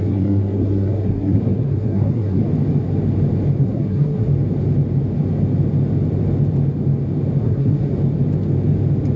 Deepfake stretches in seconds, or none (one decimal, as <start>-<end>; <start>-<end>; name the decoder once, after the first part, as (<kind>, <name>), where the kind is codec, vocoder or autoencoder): 0.0-2.4 (codec, SNAC); 3.6-4.3; 7.4-7.9